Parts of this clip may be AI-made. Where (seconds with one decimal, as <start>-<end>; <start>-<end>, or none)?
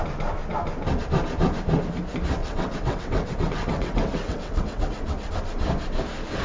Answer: 2.4-5.3